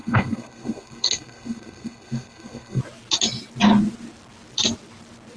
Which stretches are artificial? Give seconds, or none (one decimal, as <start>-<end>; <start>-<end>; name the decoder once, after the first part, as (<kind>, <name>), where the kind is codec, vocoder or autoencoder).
0.0-2.8 (codec, SNAC)